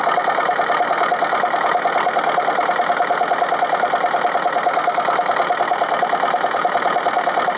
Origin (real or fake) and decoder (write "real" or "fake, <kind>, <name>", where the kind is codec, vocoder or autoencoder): real